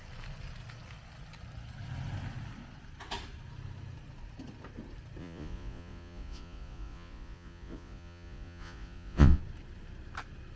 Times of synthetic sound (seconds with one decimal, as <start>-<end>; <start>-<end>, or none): 5.2-9.4